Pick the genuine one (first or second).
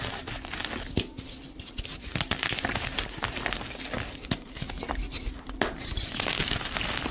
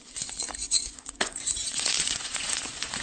first